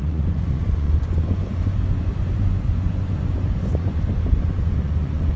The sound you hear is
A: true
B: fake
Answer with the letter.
B